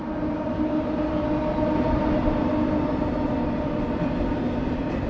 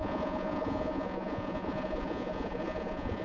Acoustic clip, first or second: first